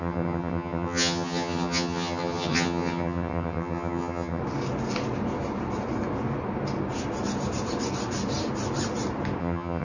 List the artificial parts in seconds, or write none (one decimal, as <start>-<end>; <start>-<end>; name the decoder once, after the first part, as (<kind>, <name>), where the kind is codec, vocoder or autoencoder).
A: 0.0-4.4 (vocoder, HiFi-GAN); 9.4-9.8